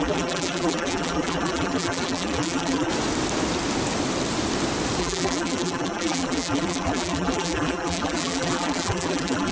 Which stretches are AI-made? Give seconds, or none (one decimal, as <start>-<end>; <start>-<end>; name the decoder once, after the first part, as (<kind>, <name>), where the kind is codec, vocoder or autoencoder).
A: 0.0-2.9 (vocoder, BigVGAN v2); 5.0-9.5